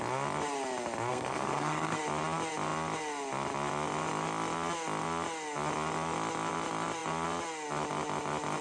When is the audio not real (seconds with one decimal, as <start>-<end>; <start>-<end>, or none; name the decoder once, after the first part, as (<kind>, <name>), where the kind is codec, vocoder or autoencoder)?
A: 1.1-2.0 (codec, SNAC)